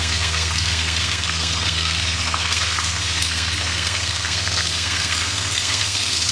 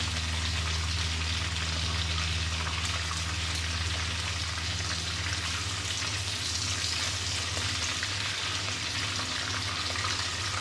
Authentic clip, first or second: second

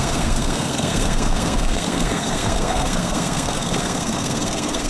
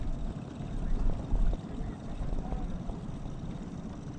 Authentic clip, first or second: second